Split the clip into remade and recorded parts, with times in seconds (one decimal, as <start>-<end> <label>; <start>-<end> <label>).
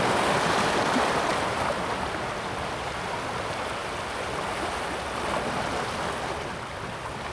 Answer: 0.0-7.3 recorded